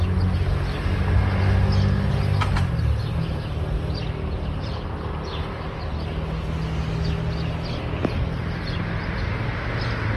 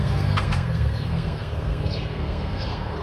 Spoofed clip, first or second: second